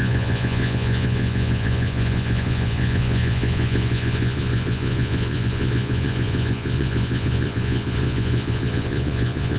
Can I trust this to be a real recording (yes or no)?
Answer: no